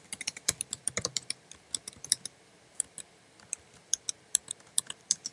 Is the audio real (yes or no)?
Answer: no